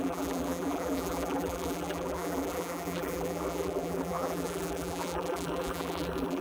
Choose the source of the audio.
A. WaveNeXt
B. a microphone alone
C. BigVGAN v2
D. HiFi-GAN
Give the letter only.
C